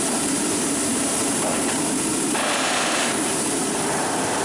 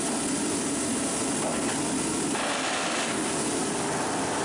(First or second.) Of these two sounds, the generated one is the first